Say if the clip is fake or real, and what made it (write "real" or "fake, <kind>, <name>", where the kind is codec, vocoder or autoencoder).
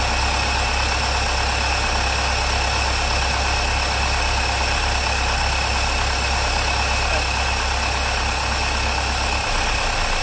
real